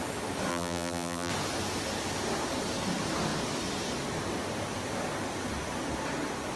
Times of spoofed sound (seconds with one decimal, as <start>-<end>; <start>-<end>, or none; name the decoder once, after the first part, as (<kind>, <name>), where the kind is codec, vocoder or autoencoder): 0.5-1.3 (vocoder, BigVGAN v2)